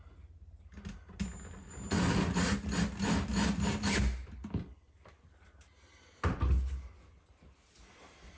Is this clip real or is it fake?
real